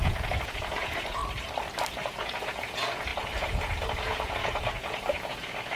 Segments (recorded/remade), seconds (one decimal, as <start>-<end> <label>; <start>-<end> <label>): 0.0-1.2 remade; 1.2-1.9 recorded; 1.9-5.8 remade